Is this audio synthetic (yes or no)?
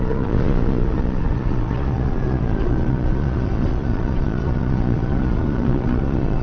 yes